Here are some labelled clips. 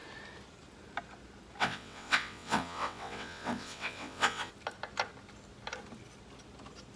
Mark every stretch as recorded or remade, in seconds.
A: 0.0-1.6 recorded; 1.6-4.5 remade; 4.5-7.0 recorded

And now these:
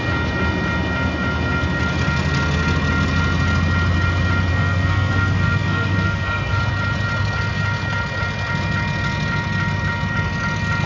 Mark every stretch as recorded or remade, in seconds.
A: 0.0-4.5 recorded; 4.5-6.6 remade; 6.6-10.9 recorded

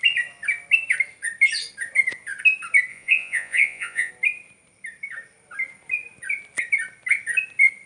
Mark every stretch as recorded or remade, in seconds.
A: 0.0-2.9 recorded; 2.9-4.1 remade; 4.1-7.9 recorded